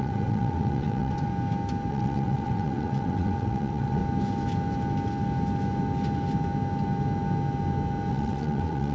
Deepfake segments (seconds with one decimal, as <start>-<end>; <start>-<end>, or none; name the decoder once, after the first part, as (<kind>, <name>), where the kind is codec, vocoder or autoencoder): 0.0-1.3 (vocoder, WaveNeXt); 1.9-4.0; 8.1-8.9